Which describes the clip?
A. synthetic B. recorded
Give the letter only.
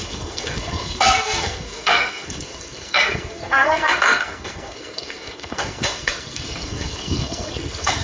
A